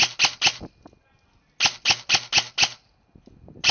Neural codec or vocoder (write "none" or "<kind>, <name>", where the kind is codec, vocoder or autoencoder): none